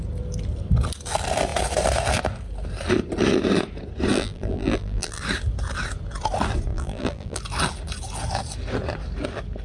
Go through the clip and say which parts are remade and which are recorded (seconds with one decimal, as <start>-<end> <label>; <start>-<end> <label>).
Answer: 0.0-4.1 recorded; 4.1-5.2 remade; 5.2-6.7 recorded; 6.7-7.4 remade; 7.4-9.6 recorded